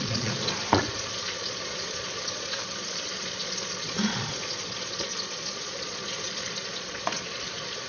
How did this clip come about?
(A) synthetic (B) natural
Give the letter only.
A